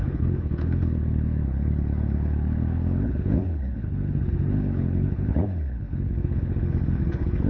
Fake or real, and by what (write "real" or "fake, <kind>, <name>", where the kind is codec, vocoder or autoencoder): fake, codec, HILCodec